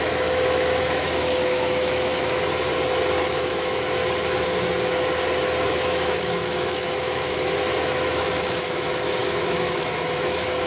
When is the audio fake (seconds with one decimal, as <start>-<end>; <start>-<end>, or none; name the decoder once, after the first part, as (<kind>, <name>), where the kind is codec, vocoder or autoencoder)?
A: 0.0-2.1 (autoencoder, DAC-VAE); 3.2-4.0; 5.6-10.7